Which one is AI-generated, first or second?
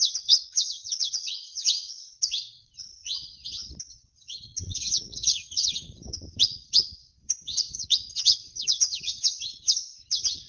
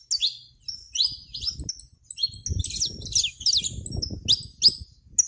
first